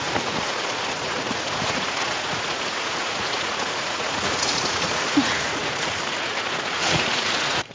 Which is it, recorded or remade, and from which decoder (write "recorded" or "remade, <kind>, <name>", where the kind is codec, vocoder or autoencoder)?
remade, vocoder, Vocos